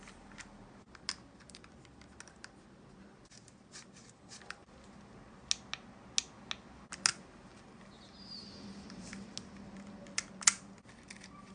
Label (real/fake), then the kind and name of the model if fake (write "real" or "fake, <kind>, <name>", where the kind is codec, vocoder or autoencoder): real